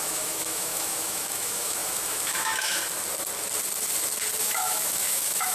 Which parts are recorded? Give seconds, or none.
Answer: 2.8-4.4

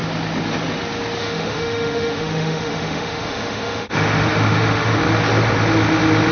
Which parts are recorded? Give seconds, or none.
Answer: 0.0-1.2; 5.0-6.3

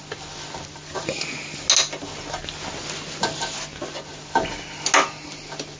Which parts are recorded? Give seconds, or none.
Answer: 0.0-5.8

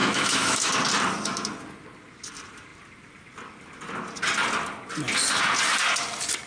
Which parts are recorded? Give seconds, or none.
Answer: 0.7-6.5